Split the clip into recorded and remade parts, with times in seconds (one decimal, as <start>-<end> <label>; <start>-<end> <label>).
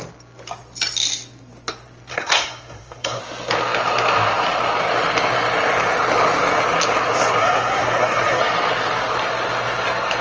0.0-2.1 recorded; 2.1-3.2 remade; 3.2-7.4 recorded; 7.4-8.4 remade; 8.4-10.2 recorded